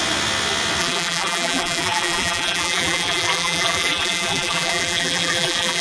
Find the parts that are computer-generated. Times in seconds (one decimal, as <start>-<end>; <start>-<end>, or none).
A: 0.8-5.8